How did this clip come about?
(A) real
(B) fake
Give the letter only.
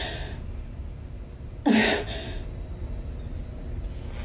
A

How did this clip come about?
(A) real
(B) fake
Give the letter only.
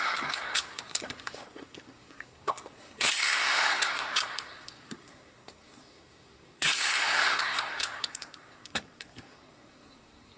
B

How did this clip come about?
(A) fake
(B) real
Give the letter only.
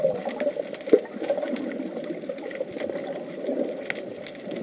B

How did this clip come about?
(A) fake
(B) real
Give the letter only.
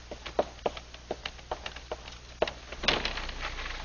B